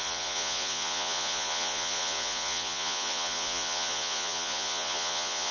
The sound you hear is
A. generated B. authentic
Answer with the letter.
A